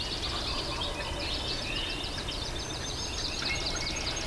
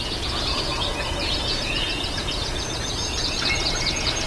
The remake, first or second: second